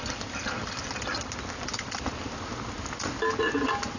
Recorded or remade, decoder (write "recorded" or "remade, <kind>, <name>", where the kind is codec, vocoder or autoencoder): recorded